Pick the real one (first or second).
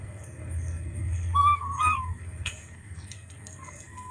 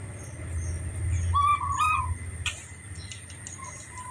second